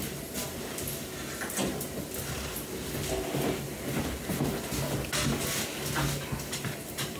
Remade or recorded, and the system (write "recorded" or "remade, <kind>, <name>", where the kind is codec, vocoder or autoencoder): recorded